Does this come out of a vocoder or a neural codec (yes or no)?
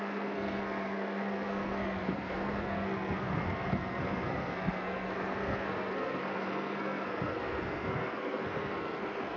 yes